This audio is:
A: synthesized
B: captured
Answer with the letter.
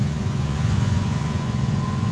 A